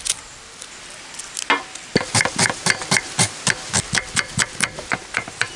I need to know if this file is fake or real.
real